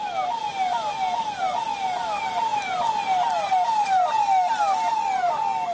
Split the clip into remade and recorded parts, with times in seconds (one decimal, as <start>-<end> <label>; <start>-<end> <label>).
0.0-5.7 recorded

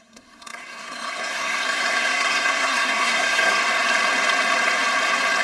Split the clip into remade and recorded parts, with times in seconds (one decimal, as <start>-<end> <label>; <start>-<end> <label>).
0.0-3.6 remade; 3.6-5.4 recorded

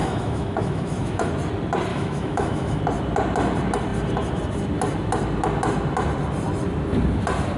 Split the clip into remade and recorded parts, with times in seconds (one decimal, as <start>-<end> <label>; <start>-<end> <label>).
0.0-1.3 remade; 1.3-1.9 recorded; 1.9-2.8 remade; 2.8-7.6 recorded

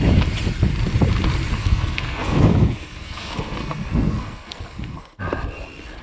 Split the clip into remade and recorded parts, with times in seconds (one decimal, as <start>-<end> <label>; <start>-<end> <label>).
0.0-1.6 recorded; 1.6-5.2 remade; 5.2-6.0 recorded

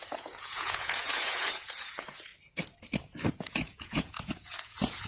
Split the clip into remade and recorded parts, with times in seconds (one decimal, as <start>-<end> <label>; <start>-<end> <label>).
0.0-2.3 remade; 2.3-3.3 recorded; 3.3-5.1 remade

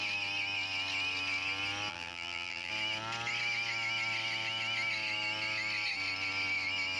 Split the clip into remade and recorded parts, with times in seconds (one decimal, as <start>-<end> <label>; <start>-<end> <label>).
0.0-1.9 recorded; 1.9-2.7 remade; 2.7-7.0 recorded

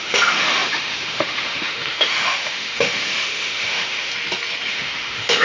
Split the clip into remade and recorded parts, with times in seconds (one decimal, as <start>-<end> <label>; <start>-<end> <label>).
0.0-4.1 remade; 4.1-4.7 recorded; 4.7-5.4 remade